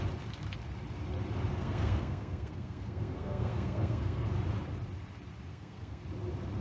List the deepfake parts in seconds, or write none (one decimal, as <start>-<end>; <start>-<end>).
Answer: 1.5-4.3; 5.5-6.0

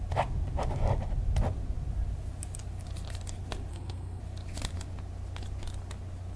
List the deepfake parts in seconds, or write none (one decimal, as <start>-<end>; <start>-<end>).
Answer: 3.7-4.2

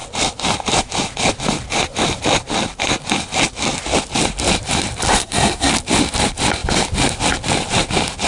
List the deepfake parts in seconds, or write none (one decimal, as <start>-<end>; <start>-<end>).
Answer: 5.1-5.7

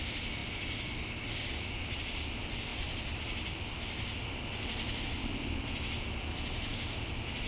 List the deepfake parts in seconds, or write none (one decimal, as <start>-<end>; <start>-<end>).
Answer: none